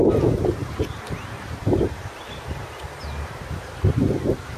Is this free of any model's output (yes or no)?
no